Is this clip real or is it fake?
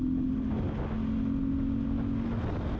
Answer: real